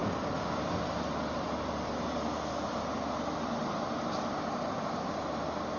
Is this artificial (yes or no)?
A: no